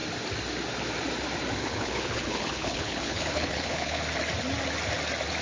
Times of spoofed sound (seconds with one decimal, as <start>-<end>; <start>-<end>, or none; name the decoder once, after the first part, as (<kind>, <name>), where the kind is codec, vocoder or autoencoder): 1.6-4.0 (codec, HILCodec)